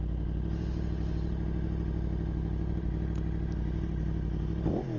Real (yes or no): yes